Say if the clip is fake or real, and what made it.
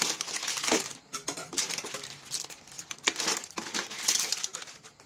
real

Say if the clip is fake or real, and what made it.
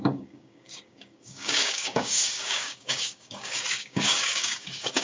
fake, codec, DAC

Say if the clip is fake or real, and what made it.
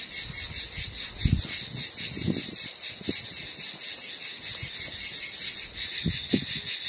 real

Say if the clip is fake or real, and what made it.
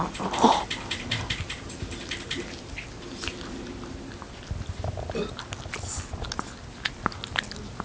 real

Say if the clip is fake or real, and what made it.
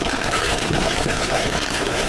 fake, codec, SNAC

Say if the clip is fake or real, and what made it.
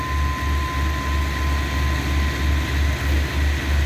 real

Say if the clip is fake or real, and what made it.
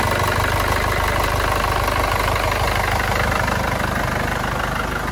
real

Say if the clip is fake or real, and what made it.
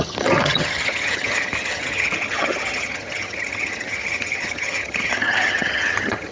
fake, vocoder, HiFi-GAN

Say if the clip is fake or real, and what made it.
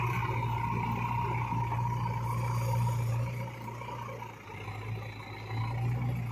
real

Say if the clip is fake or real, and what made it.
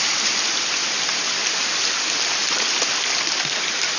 real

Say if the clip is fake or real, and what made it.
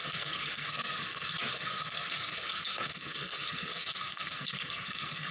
fake, codec, SNAC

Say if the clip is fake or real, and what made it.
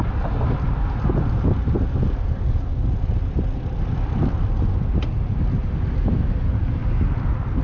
real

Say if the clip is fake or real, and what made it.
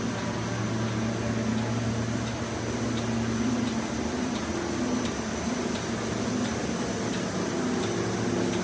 real